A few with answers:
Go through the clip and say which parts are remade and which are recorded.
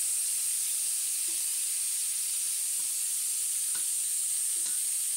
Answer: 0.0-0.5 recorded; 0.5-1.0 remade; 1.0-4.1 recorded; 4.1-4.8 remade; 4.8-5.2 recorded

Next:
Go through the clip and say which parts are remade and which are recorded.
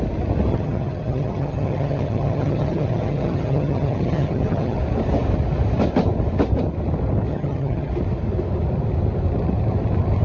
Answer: 0.0-0.5 recorded; 0.5-4.8 remade; 4.8-7.3 recorded; 7.3-7.9 remade; 7.9-10.2 recorded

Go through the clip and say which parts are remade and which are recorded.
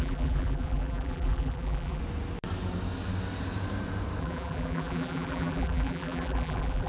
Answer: 0.0-2.0 remade; 2.0-4.2 recorded; 4.2-6.9 remade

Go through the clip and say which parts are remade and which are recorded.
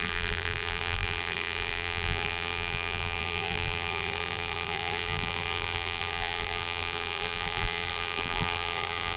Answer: 0.0-9.2 remade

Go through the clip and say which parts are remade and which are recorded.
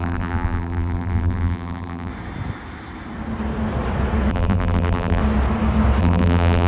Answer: 0.0-2.1 remade; 2.1-4.3 recorded; 4.3-5.2 remade; 5.2-6.0 recorded; 6.0-6.7 remade